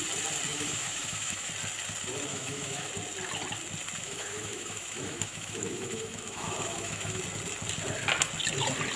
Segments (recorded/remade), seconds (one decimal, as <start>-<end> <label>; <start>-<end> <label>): 0.0-0.5 recorded; 0.5-1.5 remade; 1.5-2.3 recorded; 2.3-2.9 remade; 2.9-4.0 recorded; 4.0-7.2 remade; 7.2-9.0 recorded